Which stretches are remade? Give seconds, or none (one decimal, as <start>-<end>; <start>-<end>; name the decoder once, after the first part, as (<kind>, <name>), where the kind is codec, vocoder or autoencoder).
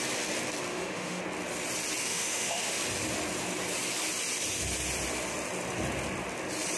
0.7-1.2 (autoencoder, DAC-VAE); 2.0-2.8